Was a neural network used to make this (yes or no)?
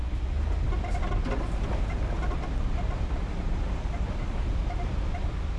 no